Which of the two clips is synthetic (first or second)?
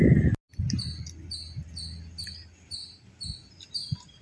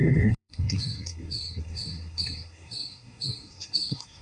second